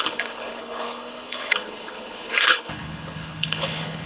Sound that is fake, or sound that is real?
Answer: fake